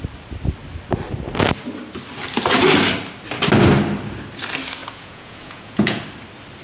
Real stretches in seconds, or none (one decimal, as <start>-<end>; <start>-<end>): 0.0-4.8; 6.0-6.6